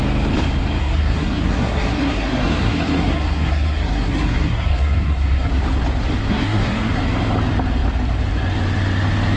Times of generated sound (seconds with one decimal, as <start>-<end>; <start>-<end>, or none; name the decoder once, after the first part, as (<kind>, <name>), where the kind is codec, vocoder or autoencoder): 0.8-5.5 (codec, SNAC); 6.3-7.0